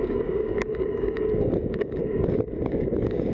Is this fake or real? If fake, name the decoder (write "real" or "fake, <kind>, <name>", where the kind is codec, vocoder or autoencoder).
fake, codec, DAC